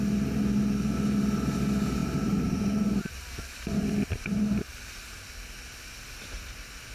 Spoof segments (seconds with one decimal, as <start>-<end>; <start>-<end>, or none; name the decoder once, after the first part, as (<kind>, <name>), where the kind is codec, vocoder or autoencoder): 2.0-5.2 (vocoder, BigVGAN v2)